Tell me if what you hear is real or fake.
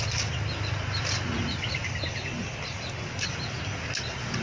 real